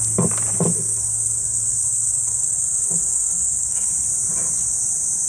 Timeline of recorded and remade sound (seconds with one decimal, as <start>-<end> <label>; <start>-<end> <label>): 0.0-0.7 recorded; 0.7-3.9 remade; 3.9-5.3 recorded